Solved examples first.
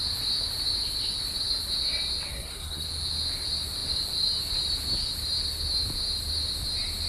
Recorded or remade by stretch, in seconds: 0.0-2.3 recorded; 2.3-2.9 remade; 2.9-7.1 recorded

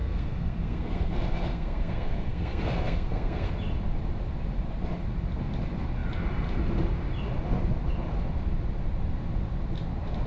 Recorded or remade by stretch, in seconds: 0.0-3.5 remade; 3.5-10.3 recorded

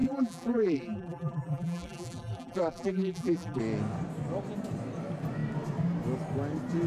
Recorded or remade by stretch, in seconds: 0.0-3.6 remade; 3.6-6.9 recorded

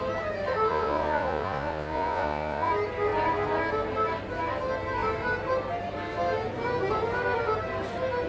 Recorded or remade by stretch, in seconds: 0.0-0.7 recorded; 0.7-2.7 remade; 2.7-8.3 recorded

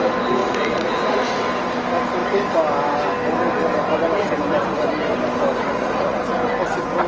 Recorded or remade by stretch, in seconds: 0.0-0.4 recorded; 0.4-1.4 remade; 1.4-5.6 recorded; 5.6-6.2 remade; 6.2-7.1 recorded